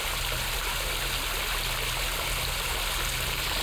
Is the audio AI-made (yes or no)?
no